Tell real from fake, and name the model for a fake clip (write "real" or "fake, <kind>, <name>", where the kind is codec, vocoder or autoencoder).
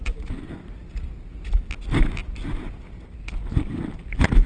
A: real